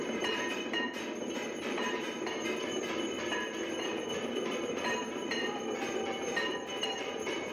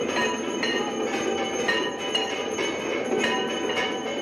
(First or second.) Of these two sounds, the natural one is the second